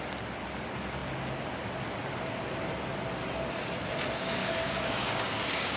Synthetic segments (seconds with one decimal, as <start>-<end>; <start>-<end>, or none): 4.4-5.8